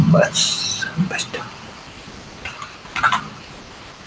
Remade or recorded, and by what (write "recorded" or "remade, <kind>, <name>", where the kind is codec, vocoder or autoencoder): recorded